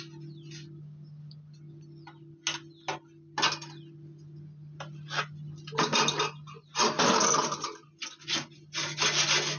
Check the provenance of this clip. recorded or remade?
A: recorded